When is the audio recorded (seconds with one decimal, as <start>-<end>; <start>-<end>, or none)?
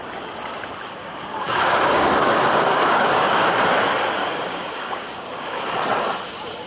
0.0-1.0; 3.6-4.2; 5.6-6.7